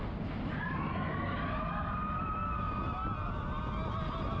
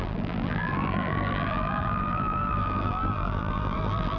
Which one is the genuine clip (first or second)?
first